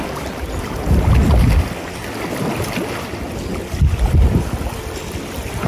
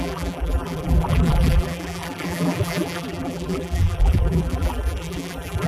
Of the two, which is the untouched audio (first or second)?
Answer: first